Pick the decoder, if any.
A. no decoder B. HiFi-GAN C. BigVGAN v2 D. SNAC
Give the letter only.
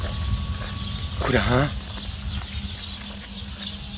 A